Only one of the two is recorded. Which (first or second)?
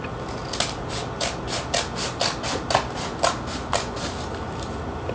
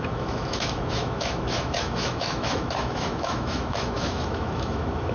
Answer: first